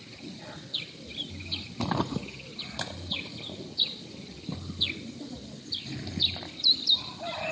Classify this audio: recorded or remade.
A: recorded